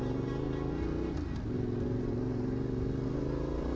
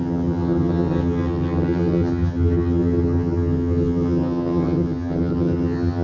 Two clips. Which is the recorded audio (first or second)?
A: first